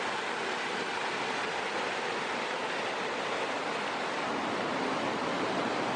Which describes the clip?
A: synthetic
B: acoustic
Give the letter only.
B